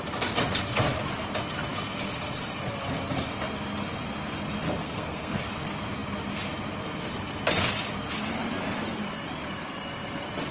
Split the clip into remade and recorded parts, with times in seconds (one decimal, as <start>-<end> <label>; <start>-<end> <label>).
0.0-4.8 recorded; 4.8-5.4 remade; 5.4-10.5 recorded